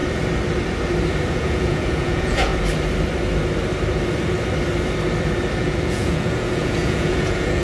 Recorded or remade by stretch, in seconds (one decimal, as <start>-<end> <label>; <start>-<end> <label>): 0.0-1.3 recorded; 1.3-2.5 remade; 2.5-5.6 recorded; 5.6-7.6 remade